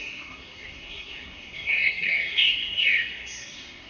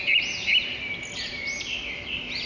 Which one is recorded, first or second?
second